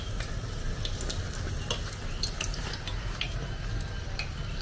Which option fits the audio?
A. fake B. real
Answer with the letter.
B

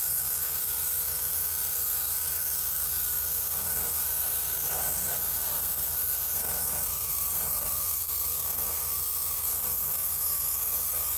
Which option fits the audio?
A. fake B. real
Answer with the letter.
A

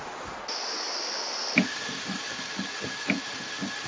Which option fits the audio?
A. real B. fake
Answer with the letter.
A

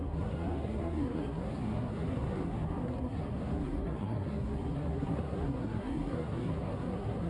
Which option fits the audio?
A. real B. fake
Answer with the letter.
B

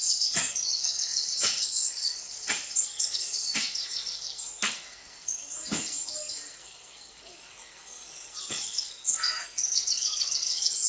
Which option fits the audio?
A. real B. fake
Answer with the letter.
B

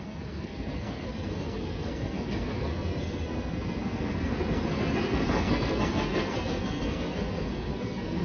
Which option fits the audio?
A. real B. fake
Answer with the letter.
B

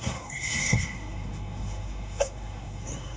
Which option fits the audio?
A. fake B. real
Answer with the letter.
A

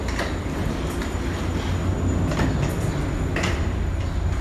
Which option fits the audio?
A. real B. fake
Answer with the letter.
A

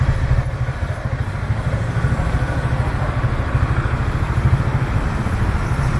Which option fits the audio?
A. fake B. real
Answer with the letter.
B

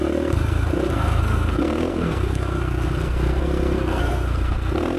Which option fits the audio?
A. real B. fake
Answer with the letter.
B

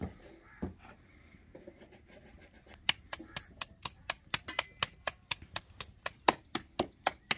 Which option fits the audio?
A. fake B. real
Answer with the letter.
B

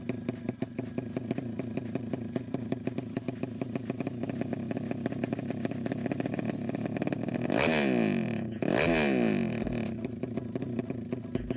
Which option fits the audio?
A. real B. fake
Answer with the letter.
A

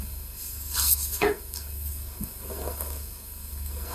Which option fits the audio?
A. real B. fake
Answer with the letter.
B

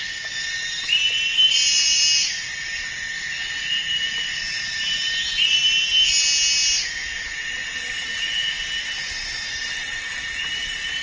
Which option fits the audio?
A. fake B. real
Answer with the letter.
B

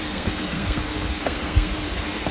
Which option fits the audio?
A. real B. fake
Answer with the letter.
B